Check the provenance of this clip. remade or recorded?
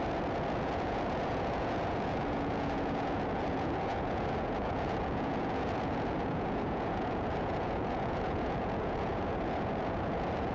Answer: remade